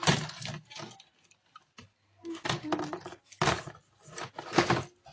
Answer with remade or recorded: recorded